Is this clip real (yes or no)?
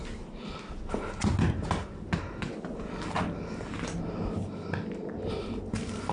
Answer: yes